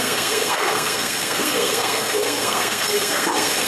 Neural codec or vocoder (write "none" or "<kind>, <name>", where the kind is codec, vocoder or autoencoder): codec, SNAC